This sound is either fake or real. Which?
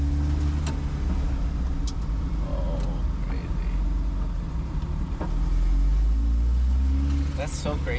real